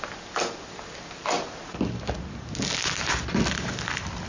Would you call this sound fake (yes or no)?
no